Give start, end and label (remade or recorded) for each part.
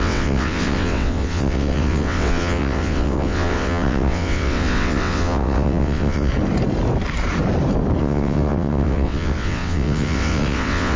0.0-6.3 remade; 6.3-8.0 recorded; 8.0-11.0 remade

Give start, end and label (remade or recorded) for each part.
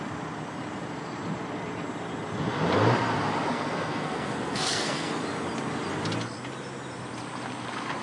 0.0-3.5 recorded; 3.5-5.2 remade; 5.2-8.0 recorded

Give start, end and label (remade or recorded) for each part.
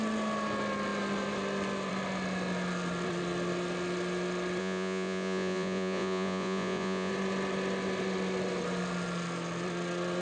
0.0-4.6 recorded; 4.6-7.1 remade; 7.1-10.2 recorded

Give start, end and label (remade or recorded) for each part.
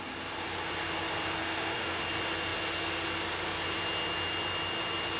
0.0-1.4 recorded; 1.4-2.0 remade; 2.0-5.2 recorded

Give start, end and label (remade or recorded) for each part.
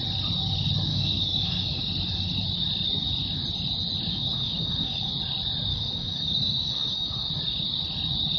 0.0-0.9 recorded; 0.9-1.8 remade; 1.8-4.1 recorded; 4.1-5.1 remade; 5.1-5.7 recorded; 5.7-7.3 remade; 7.3-8.4 recorded